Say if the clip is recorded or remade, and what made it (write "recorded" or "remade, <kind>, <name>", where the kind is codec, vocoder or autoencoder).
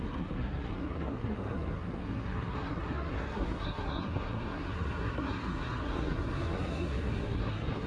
remade, codec, SNAC